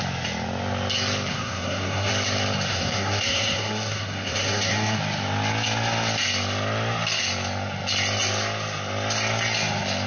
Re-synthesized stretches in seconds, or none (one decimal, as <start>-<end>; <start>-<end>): 1.3-2.1; 2.7-5.0